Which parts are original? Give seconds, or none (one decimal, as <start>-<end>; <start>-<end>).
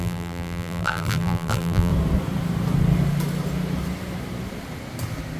1.9-5.4